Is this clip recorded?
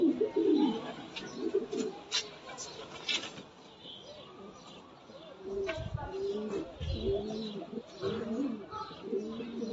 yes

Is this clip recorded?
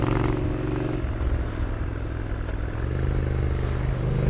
yes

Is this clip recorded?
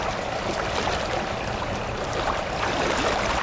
yes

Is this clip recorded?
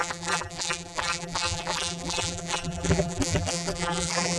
no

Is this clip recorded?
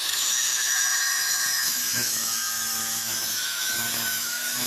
no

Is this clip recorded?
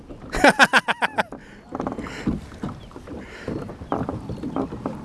yes